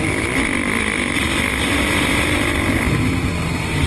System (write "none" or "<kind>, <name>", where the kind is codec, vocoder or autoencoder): none